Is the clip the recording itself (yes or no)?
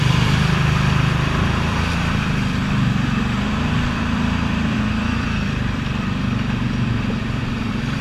no